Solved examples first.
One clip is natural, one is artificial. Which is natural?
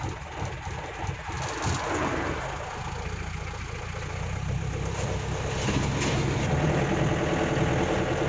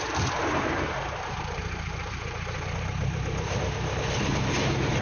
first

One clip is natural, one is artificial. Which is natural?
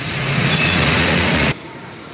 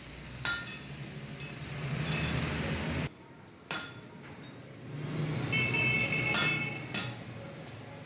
second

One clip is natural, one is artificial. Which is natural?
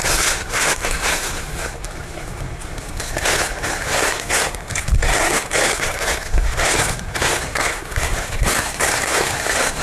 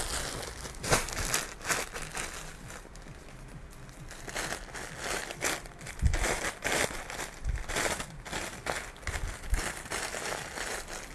second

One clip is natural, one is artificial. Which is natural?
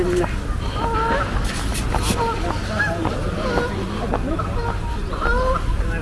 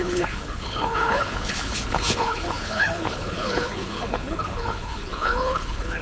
first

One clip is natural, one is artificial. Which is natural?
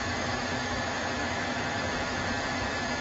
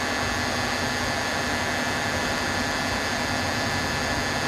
second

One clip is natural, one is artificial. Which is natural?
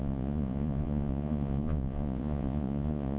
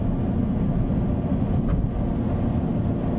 second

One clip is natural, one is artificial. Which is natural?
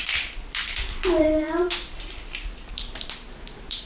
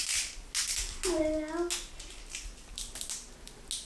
second